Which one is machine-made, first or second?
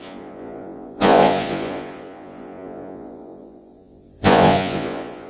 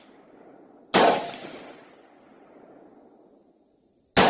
first